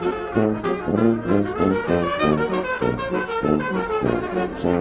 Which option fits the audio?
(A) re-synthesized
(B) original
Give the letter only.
B